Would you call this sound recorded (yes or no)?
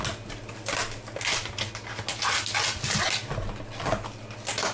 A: yes